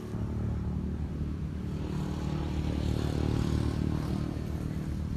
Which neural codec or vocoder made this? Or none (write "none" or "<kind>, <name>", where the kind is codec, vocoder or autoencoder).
none